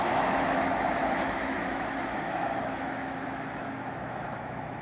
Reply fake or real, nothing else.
fake